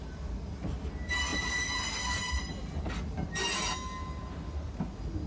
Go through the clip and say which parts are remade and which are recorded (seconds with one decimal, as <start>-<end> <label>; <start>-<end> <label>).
0.0-5.3 recorded